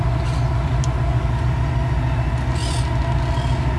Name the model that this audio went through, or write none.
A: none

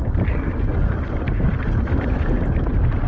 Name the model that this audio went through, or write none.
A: none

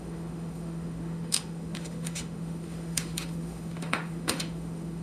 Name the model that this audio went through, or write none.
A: autoencoder, DAC-VAE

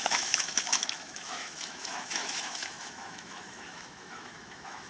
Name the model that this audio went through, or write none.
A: autoencoder, DAC-VAE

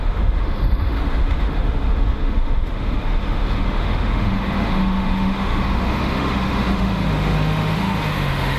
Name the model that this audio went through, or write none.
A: autoencoder, DAC-VAE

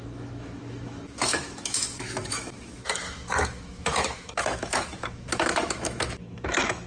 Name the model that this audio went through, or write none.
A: autoencoder, DAC-VAE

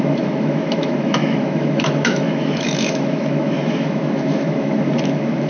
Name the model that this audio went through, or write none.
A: autoencoder, DAC-VAE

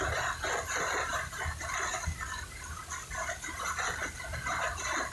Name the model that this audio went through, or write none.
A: none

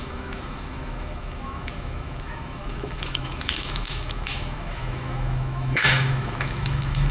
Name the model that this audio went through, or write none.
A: autoencoder, DAC-VAE